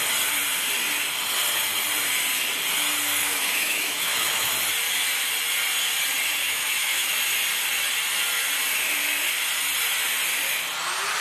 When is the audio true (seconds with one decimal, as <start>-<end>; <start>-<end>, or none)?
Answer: 0.0-3.2; 4.5-6.4; 7.1-11.2